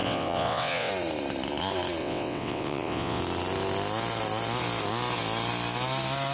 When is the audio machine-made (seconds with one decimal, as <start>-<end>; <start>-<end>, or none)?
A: 0.0-0.9; 2.0-3.2